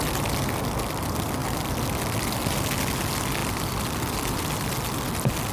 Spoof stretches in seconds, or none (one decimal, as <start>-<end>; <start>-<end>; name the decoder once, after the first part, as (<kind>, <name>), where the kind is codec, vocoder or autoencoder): none